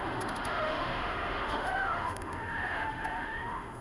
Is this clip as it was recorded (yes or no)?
no